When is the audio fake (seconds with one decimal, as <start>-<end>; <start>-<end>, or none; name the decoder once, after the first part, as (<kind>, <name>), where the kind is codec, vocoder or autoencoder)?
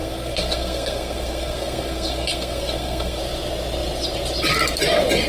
0.0-3.2 (codec, SNAC)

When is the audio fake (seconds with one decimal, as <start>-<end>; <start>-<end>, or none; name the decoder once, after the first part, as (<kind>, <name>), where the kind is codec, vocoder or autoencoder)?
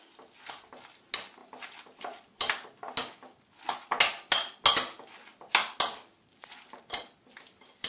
none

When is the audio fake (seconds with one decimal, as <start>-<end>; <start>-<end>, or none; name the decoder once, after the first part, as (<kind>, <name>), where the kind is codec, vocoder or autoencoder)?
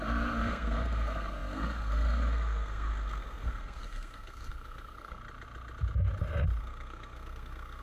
0.0-5.2 (codec, SNAC); 6.6-7.8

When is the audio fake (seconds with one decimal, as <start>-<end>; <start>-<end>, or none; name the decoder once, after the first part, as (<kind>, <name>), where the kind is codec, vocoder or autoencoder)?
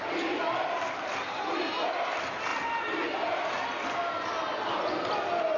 none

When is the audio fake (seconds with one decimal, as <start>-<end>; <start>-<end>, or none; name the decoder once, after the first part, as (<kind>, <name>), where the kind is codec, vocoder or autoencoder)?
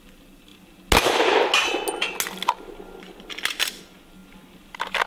none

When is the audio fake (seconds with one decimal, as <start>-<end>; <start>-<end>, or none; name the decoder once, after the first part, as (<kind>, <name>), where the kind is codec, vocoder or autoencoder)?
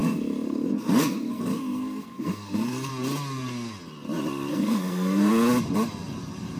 0.0-2.9 (codec, SNAC); 4.5-5.3